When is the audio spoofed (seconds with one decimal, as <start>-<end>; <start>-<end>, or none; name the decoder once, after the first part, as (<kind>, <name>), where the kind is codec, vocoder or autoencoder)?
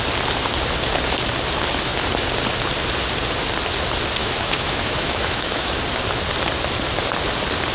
4.2-5.7 (autoencoder, DAC-VAE)